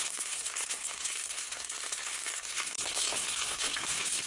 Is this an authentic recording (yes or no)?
no